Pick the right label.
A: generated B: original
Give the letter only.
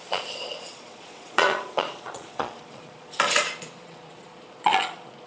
A